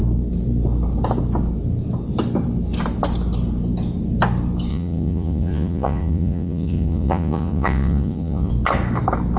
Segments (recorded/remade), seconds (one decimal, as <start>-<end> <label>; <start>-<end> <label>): 0.0-4.7 recorded; 4.7-8.5 remade; 8.5-9.4 recorded